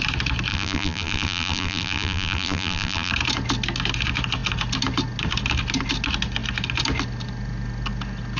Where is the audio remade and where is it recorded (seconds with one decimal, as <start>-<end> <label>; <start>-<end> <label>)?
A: 0.0-0.5 recorded; 0.5-3.1 remade; 3.1-8.4 recorded